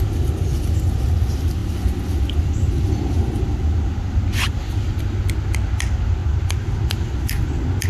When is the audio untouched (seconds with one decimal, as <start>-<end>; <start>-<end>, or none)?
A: 0.0-7.9